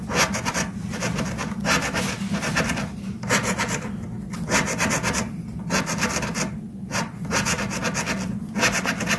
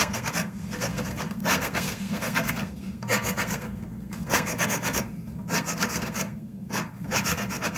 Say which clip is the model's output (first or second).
second